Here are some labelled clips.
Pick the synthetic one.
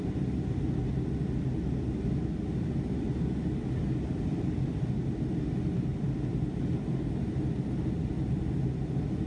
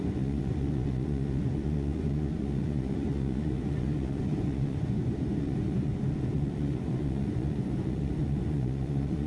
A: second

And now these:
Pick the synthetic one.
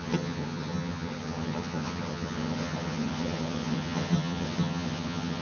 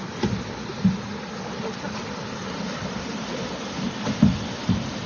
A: first